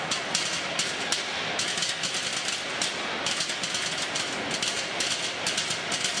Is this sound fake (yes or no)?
no